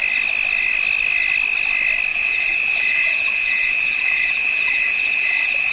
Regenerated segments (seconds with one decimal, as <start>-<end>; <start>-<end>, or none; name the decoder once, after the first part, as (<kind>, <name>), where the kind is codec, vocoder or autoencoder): 2.1-5.7 (vocoder, Vocos)